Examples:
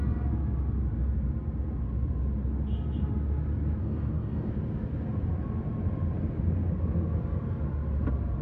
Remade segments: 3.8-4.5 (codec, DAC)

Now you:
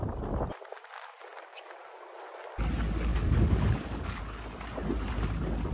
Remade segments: 3.1-4.2 (codec, DAC)

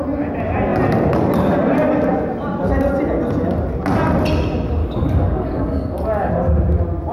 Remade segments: 4.8-6.3 (codec, DAC)